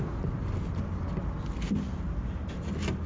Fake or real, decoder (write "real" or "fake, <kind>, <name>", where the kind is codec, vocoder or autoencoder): real